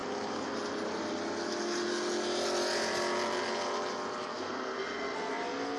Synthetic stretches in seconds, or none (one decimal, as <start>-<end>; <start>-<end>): 4.3-5.3